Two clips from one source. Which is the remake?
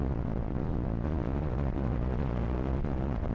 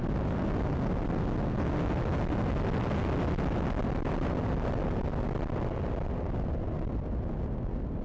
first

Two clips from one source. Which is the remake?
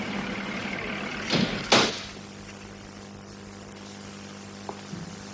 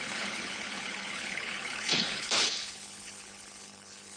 second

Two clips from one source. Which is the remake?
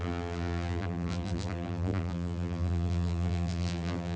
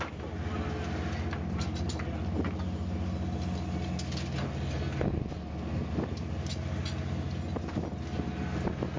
first